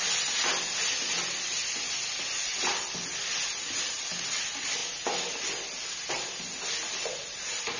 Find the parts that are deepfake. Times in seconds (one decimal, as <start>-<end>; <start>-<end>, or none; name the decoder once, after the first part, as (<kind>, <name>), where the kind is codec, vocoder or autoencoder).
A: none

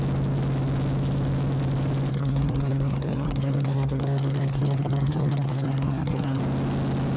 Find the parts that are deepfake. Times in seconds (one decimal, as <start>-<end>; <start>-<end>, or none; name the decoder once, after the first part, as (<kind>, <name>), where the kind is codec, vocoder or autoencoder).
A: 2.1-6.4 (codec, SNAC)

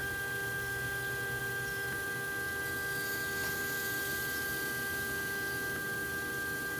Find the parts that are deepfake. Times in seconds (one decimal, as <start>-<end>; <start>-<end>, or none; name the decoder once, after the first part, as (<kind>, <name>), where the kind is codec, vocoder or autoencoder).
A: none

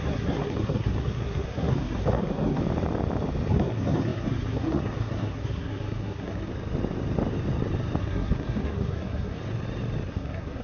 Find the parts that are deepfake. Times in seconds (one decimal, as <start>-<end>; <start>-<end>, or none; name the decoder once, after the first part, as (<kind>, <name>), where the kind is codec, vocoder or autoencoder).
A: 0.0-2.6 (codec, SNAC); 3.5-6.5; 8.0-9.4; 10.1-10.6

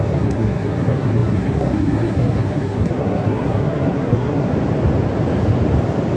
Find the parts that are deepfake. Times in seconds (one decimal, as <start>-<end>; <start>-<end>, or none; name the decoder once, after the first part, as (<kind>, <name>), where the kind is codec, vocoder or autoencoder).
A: 0.0-4.5 (codec, SNAC)

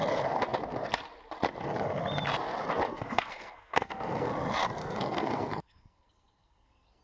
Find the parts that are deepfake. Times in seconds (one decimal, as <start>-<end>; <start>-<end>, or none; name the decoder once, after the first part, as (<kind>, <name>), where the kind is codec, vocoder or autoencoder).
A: 2.9-4.3 (codec, SNAC); 4.8-7.0